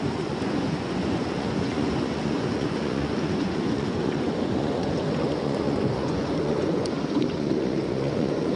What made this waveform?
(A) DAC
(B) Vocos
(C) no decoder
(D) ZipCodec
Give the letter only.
B